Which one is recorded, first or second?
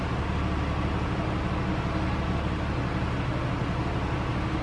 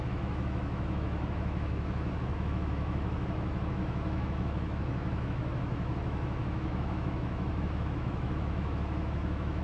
first